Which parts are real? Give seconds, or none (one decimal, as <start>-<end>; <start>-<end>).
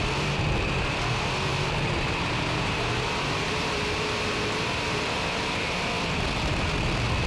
0.0-1.5; 5.9-7.3